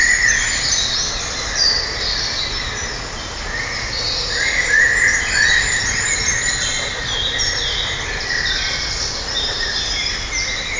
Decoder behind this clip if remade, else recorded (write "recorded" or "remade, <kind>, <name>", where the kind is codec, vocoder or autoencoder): recorded